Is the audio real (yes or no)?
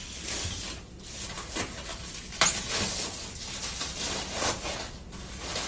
yes